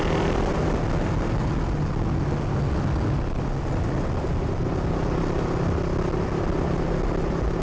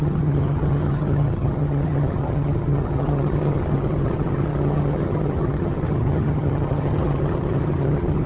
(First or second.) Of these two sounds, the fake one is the second